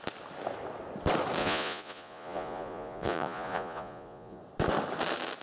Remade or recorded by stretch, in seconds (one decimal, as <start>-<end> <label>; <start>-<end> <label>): 0.0-1.4 recorded; 1.4-4.4 remade; 4.4-5.4 recorded

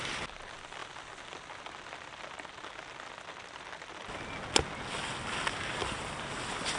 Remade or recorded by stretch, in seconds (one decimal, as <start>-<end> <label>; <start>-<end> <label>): 0.0-6.8 recorded

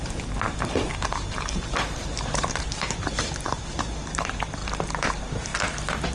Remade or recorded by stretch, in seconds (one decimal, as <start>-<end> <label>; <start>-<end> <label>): 0.0-4.6 remade; 4.6-5.1 recorded; 5.1-5.5 remade; 5.5-6.1 recorded

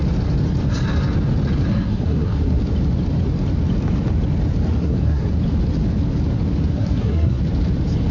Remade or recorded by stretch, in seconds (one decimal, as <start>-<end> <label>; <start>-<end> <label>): 0.0-1.7 recorded; 1.7-2.6 remade; 2.6-4.8 recorded; 4.8-5.3 remade; 5.3-6.7 recorded; 6.7-7.4 remade; 7.4-8.1 recorded

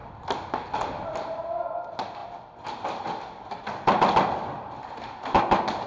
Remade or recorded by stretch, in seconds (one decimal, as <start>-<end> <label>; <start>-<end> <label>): 0.0-5.9 recorded

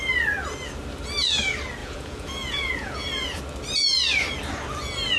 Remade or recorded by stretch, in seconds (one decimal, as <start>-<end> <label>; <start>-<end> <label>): 0.0-1.8 recorded; 1.8-3.4 remade; 3.4-5.2 recorded